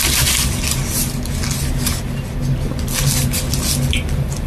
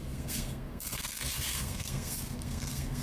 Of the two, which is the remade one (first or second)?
second